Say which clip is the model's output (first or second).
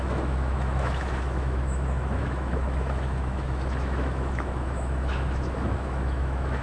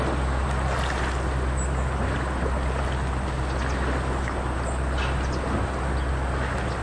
first